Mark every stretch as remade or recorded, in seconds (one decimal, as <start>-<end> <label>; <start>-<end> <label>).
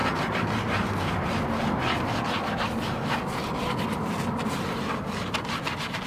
0.0-6.1 recorded